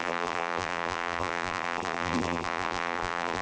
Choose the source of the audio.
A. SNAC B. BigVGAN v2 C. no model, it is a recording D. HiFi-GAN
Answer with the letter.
B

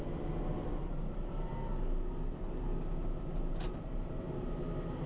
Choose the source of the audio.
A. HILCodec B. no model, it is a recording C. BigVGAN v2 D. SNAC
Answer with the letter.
B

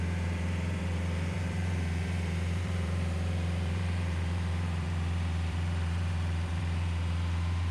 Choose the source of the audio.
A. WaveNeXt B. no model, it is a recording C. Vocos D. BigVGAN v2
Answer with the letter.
D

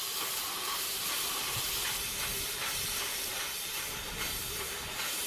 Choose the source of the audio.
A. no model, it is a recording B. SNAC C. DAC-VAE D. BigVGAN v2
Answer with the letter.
D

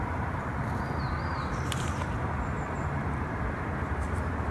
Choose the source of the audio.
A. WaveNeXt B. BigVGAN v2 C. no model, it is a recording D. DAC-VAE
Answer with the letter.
B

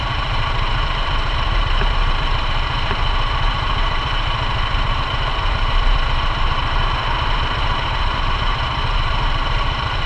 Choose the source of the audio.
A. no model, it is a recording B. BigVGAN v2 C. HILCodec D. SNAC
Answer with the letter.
B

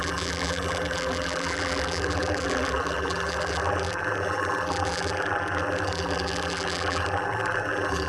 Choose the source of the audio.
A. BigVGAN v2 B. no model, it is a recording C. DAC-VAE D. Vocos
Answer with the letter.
A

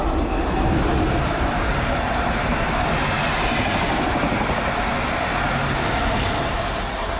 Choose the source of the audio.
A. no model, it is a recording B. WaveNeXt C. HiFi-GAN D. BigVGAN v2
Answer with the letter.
A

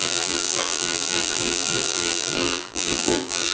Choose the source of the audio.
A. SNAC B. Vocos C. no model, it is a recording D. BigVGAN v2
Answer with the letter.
D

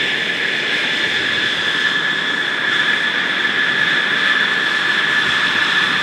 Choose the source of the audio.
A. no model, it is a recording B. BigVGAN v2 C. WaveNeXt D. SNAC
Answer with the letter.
A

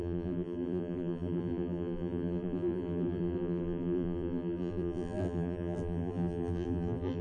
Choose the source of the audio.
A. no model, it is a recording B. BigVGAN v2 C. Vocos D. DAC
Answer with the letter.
B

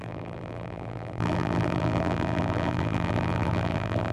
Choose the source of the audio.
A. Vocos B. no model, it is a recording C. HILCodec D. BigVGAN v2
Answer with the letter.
D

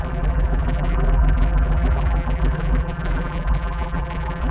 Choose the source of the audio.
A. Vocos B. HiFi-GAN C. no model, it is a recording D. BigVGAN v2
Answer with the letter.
D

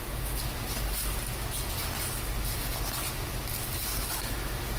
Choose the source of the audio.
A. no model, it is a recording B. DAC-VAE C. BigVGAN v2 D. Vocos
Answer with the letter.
A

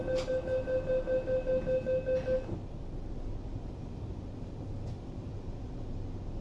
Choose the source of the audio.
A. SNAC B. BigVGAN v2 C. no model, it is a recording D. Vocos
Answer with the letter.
C